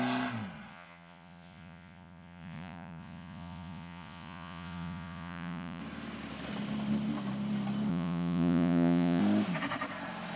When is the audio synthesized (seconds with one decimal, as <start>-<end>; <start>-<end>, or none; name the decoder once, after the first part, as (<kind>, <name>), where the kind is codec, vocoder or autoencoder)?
0.7-5.8 (vocoder, Vocos); 7.9-9.2